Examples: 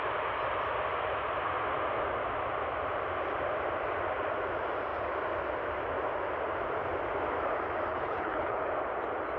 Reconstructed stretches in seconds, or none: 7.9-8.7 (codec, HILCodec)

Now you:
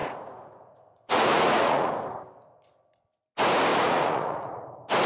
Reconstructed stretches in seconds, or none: 0.0-1.9 (vocoder, Vocos); 3.7-4.6

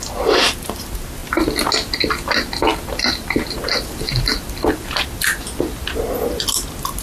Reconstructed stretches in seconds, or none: 1.2-1.7 (vocoder, BigVGAN v2); 2.7-5.8